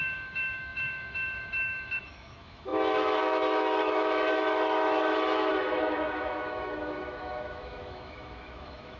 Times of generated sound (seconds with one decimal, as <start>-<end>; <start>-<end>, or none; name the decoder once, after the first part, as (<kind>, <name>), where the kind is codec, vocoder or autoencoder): 0.0-9.0 (autoencoder, DAC-VAE)